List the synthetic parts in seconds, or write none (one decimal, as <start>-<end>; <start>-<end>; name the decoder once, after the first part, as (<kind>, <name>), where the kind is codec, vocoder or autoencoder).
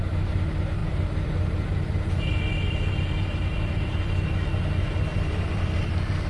0.8-2.4 (vocoder, BigVGAN v2); 5.1-5.8